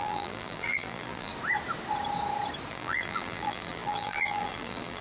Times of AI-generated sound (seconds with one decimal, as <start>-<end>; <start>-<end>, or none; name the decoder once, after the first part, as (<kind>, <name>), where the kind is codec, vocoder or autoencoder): 0.0-1.3 (vocoder, BigVGAN v2); 2.7-5.0